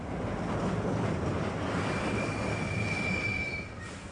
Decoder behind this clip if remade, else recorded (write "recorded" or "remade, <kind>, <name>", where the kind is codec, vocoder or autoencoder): recorded